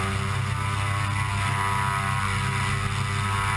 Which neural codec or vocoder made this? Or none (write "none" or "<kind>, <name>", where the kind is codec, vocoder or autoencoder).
none